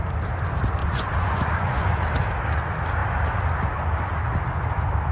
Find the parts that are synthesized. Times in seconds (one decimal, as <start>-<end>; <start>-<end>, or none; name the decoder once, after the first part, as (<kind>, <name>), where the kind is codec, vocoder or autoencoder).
0.8-1.9 (vocoder, Vocos)